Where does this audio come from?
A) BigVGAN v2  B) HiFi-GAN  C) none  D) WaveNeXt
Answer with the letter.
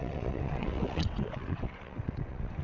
D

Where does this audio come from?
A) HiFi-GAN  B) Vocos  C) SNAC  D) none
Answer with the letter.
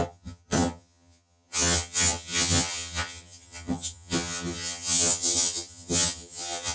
A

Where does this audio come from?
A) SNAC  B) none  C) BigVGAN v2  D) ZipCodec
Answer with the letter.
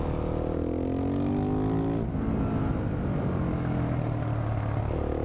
B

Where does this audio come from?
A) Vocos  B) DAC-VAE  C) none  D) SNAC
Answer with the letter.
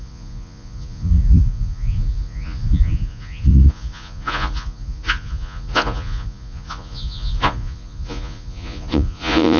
A